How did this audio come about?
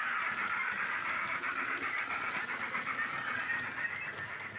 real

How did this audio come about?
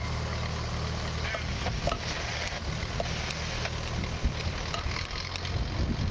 real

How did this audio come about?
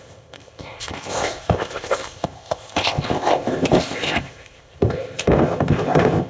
fake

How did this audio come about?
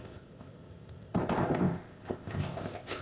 fake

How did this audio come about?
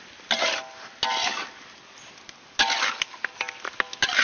real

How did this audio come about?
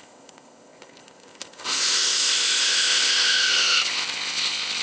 fake